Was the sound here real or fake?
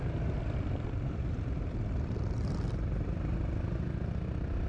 fake